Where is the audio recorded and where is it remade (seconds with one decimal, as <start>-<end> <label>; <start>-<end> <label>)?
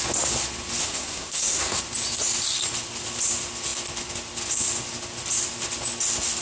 0.0-0.8 recorded; 0.8-1.8 remade; 1.8-6.4 recorded